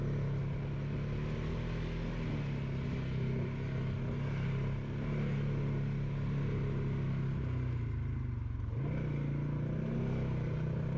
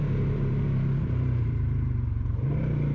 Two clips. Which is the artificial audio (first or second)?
second